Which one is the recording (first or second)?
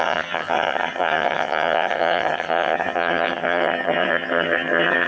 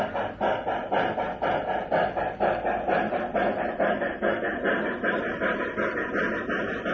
second